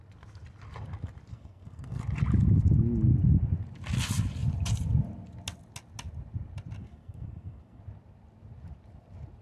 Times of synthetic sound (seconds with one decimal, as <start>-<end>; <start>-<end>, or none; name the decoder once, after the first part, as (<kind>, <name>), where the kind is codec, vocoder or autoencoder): 1.3-2.0 (codec, SNAC); 6.8-7.8